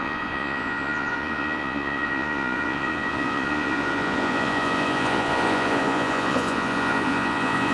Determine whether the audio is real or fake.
fake